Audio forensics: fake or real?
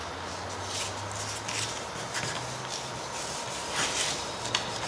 real